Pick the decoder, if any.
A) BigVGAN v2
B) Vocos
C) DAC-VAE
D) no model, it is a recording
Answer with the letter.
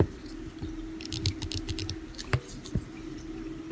D